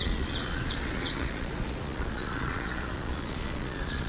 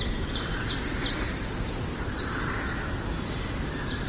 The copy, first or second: first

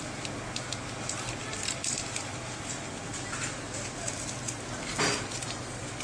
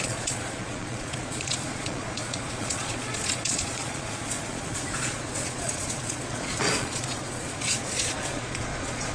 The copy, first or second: second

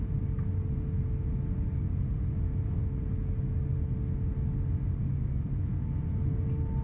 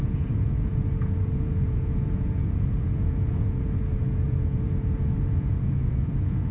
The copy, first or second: second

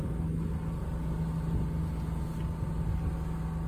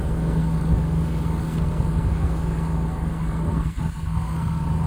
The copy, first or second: second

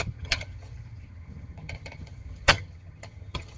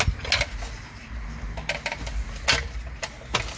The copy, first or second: first